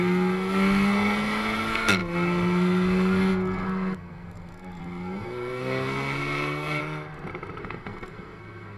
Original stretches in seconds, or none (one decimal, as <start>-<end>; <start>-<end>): 6.8-7.6